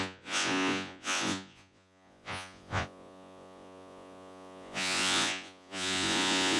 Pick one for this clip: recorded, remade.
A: remade